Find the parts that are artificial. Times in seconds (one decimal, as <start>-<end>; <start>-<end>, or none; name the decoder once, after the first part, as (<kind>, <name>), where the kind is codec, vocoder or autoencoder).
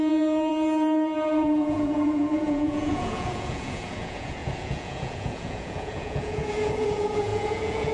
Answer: 0.0-7.9 (vocoder, Vocos)